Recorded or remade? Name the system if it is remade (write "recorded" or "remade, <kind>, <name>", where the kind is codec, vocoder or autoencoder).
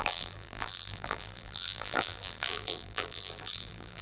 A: remade, vocoder, BigVGAN v2